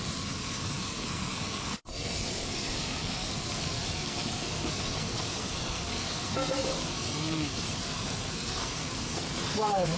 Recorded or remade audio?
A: remade